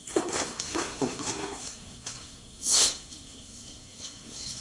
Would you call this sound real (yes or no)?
no